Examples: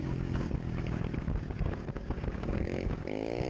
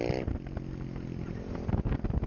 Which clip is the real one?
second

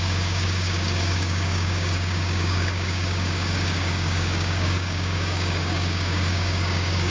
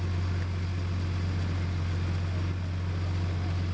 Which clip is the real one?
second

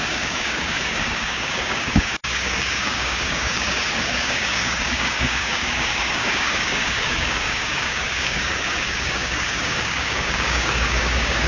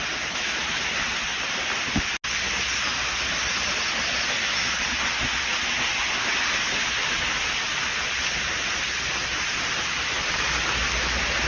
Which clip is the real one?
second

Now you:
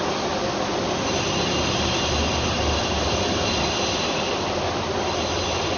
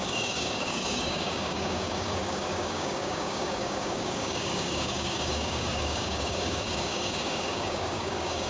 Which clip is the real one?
first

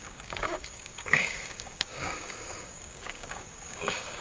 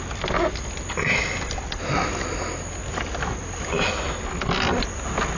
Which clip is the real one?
second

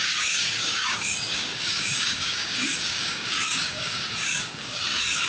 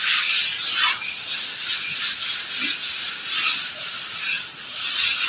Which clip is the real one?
second